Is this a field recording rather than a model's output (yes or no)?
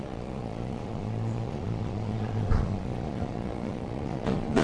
no